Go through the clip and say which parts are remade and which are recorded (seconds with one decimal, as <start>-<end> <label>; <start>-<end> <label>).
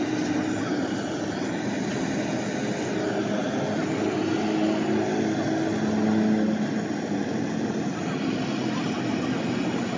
0.0-10.0 recorded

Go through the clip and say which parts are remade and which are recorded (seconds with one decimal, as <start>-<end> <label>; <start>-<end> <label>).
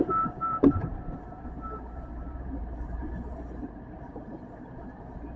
0.0-5.4 remade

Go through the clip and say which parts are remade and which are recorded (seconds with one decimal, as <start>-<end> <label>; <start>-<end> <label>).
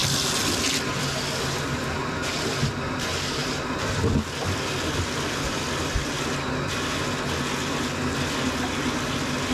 0.0-2.3 recorded; 2.3-6.1 remade; 6.1-9.5 recorded